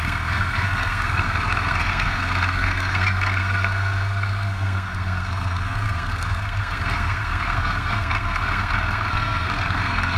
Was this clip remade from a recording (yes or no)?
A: yes